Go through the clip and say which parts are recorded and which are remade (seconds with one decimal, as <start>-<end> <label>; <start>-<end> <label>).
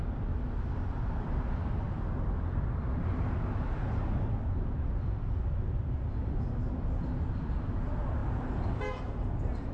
0.0-9.7 recorded